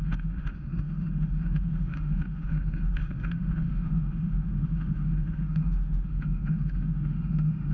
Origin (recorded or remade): remade